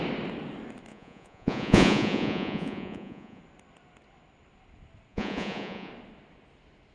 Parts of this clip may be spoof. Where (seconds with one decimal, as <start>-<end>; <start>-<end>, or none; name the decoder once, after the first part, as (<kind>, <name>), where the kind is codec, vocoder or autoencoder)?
0.9-3.4 (vocoder, Vocos); 5.1-5.9